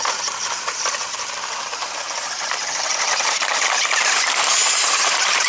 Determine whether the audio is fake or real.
fake